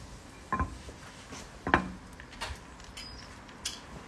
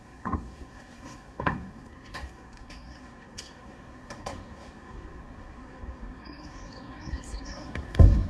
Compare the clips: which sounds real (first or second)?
first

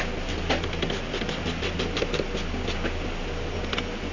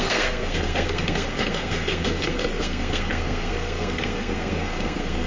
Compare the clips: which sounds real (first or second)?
first